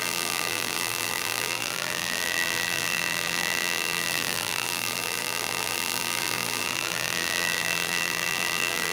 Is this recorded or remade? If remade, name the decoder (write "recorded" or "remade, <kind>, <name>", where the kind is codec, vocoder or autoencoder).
remade, vocoder, BigVGAN v2